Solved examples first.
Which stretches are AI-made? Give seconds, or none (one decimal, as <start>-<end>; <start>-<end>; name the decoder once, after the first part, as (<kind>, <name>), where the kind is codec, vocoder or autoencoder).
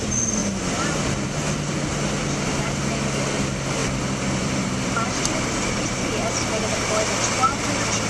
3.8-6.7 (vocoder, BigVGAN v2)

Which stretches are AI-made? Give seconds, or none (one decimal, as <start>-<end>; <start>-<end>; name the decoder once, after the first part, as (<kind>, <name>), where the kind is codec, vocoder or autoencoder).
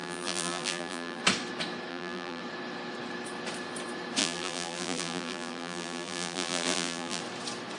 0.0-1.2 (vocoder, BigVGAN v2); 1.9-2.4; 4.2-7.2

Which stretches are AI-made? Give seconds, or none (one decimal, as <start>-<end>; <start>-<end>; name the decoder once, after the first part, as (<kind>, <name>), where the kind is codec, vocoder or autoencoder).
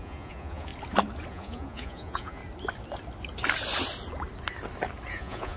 0.0-0.7 (vocoder, Vocos); 1.3-2.4; 5.1-5.6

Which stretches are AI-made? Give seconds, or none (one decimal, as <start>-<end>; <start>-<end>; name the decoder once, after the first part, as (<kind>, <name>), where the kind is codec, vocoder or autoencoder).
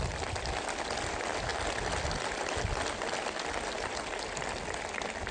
none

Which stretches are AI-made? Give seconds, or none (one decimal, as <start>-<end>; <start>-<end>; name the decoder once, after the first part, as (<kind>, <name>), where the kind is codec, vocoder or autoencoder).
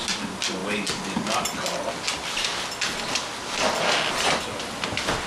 none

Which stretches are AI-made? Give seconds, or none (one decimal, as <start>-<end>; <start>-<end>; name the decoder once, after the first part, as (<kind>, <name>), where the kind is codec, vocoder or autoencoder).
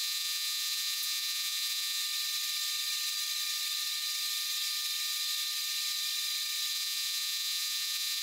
0.0-2.0 (vocoder, Vocos); 6.7-8.2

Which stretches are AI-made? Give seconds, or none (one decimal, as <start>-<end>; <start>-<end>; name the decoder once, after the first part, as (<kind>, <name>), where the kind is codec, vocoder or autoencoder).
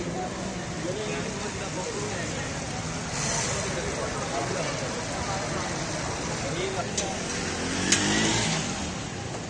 none